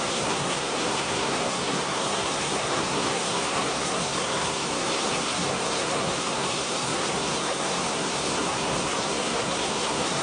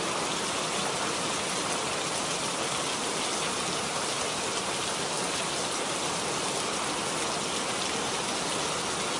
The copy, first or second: first